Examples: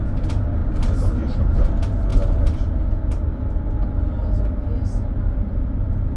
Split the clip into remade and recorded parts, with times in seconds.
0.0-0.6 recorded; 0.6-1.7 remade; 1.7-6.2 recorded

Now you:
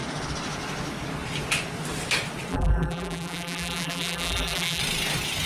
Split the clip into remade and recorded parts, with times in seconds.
0.0-2.5 recorded; 2.5-4.8 remade; 4.8-5.5 recorded

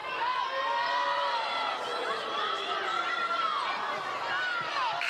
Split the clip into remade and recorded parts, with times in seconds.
0.0-5.1 remade

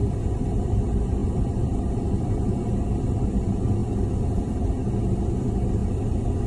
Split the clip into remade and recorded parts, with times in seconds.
0.0-1.2 recorded; 1.2-2.7 remade; 2.7-3.8 recorded; 3.8-4.7 remade; 4.7-5.8 recorded; 5.8-6.5 remade

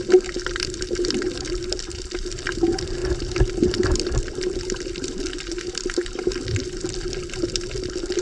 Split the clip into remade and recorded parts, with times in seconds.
0.0-3.0 recorded; 3.0-7.1 remade; 7.1-8.2 recorded

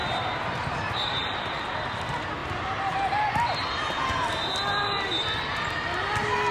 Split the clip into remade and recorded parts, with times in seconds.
0.0-6.5 recorded